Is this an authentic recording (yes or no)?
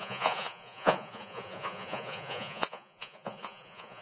no